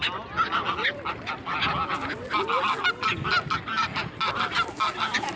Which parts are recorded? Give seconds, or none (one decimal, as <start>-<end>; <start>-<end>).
0.0-5.4